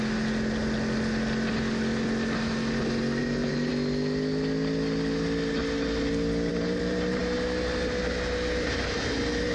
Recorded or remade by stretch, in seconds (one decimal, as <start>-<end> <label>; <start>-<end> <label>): 0.0-3.2 recorded; 3.2-3.7 remade; 3.7-6.5 recorded; 6.5-7.2 remade; 7.2-9.5 recorded